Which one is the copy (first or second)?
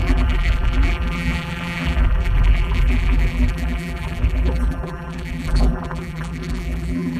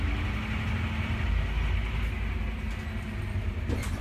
first